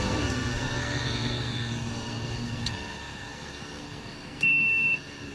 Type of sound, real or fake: fake